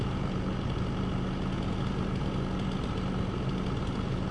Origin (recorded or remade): recorded